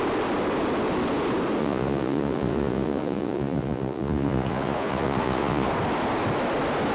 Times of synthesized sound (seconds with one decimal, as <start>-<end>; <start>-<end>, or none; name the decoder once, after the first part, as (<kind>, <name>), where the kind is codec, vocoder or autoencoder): 1.6-5.7 (vocoder, Vocos)